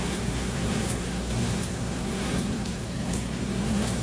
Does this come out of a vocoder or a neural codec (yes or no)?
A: yes